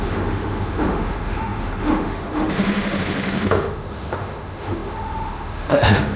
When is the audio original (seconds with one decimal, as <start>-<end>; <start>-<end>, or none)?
none